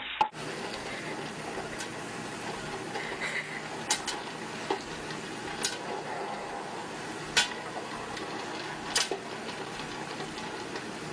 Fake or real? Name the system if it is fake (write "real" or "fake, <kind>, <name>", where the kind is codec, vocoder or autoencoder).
real